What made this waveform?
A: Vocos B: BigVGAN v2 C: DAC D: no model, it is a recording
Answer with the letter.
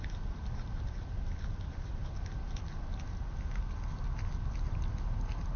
D